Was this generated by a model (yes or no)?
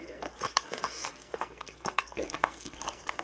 yes